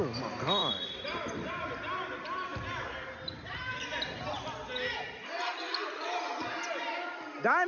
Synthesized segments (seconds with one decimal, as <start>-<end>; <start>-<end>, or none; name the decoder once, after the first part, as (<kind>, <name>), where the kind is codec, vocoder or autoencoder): 0.6-1.5 (vocoder, BigVGAN v2); 2.5-4.4